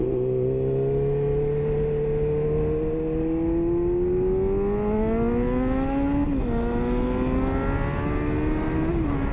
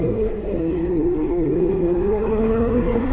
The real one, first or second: first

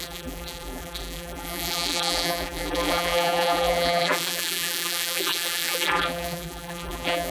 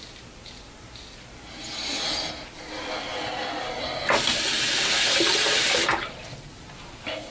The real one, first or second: second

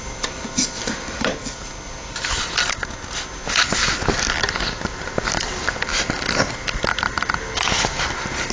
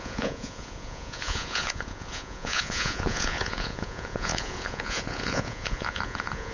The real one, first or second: first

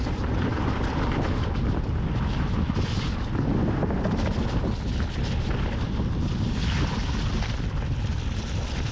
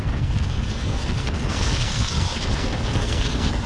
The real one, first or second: first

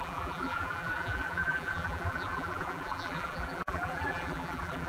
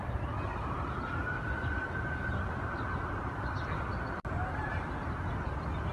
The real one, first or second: second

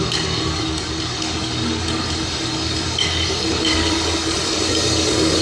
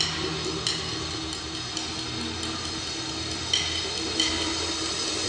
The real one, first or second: second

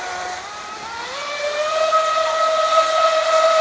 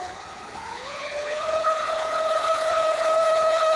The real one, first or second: first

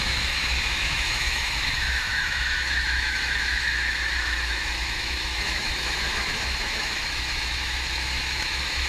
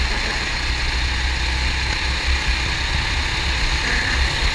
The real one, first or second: second